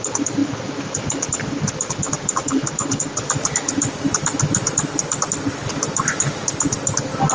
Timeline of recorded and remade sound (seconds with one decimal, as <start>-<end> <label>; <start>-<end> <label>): 0.0-2.4 recorded; 2.4-4.4 remade; 4.4-7.3 recorded